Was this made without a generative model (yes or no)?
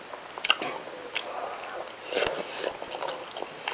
yes